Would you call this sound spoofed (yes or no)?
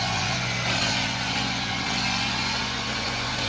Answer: yes